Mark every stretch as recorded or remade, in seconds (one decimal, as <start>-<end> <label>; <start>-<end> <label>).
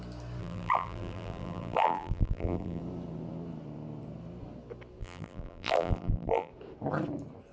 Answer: 0.0-0.4 recorded; 0.4-2.8 remade; 2.8-5.0 recorded; 5.0-6.5 remade; 6.5-7.5 recorded